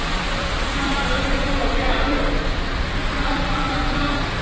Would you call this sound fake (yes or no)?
yes